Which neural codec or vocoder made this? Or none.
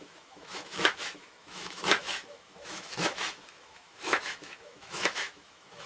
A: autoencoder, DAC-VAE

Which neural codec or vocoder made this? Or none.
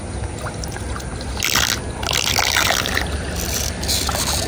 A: none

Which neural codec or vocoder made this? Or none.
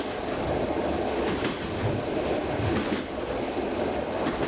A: none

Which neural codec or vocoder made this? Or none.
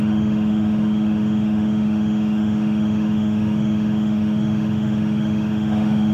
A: autoencoder, DAC-VAE